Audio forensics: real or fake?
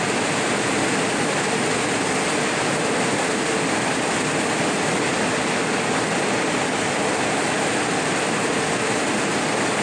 real